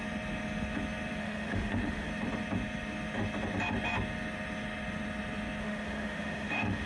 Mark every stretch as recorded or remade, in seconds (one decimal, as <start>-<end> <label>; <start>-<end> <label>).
0.0-1.2 recorded; 1.2-2.1 remade; 2.1-5.6 recorded; 5.6-6.9 remade